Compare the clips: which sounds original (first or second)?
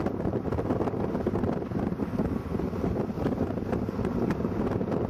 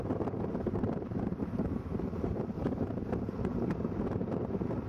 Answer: first